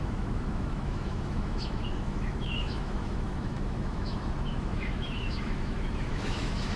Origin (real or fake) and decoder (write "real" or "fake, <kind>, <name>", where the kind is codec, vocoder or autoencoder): fake, autoencoder, DAC-VAE